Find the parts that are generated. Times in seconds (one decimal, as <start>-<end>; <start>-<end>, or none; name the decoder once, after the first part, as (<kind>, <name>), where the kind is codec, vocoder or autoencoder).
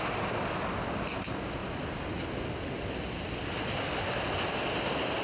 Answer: none